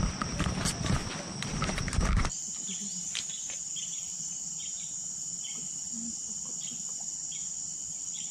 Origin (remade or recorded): recorded